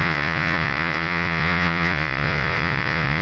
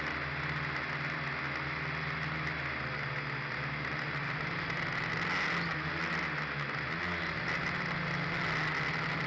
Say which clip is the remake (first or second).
first